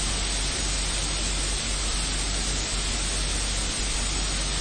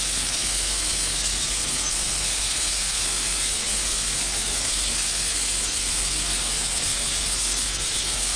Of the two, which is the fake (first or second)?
second